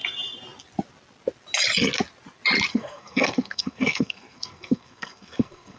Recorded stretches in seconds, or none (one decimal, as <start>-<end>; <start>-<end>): 0.0-2.7